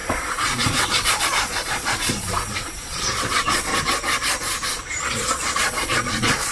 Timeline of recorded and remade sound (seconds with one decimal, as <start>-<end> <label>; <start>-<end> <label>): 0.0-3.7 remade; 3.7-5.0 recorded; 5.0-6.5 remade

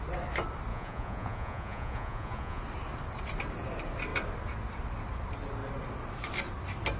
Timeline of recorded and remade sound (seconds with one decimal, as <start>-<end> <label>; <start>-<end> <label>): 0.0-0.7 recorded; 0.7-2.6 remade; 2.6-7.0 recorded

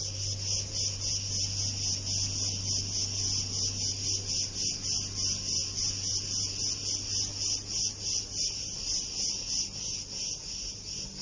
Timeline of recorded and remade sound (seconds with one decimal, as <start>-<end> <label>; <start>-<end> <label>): 0.0-11.2 recorded

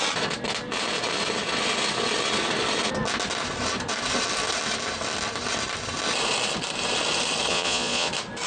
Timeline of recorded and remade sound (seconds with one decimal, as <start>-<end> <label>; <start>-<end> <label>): 0.0-7.5 recorded; 7.5-8.1 remade; 8.1-8.5 recorded